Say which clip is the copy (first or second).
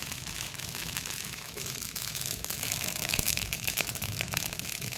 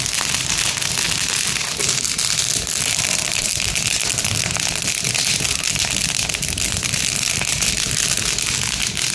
first